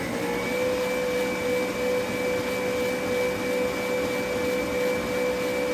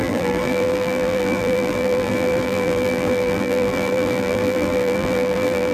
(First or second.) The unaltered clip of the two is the first